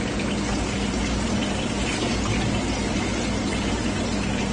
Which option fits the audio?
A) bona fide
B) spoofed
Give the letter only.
A